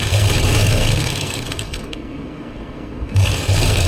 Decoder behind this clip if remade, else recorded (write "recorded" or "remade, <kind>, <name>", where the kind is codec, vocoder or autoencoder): remade, codec, SNAC